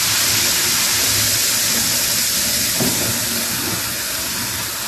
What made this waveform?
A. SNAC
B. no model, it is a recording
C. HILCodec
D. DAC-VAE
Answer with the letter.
B